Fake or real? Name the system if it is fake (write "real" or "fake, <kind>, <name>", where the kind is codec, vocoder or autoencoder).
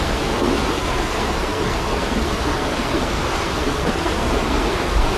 fake, codec, SNAC